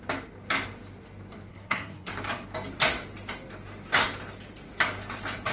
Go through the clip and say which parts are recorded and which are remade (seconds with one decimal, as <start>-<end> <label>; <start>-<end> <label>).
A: 0.0-1.5 recorded; 1.5-2.1 remade; 2.1-5.5 recorded